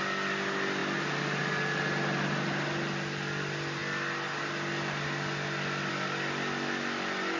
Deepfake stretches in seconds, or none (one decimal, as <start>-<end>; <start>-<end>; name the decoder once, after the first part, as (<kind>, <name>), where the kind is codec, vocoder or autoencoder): none